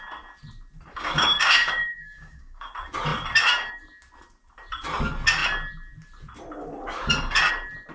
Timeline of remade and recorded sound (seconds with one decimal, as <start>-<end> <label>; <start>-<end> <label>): 0.0-0.9 recorded; 0.9-2.7 remade; 2.7-7.9 recorded